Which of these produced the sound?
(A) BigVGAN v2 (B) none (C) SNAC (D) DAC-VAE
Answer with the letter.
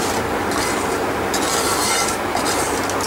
B